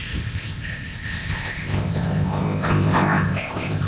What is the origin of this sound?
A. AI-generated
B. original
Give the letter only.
A